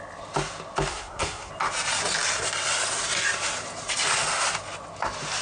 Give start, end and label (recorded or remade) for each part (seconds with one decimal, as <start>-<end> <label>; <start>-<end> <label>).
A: 0.0-0.9 recorded; 0.9-1.5 remade; 1.5-5.4 recorded